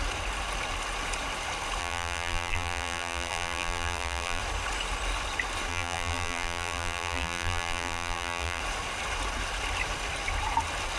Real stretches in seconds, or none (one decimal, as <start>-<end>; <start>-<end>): 0.0-1.8; 4.4-5.7; 8.6-11.0